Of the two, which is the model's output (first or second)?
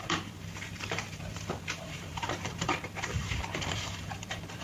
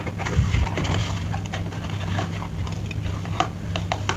first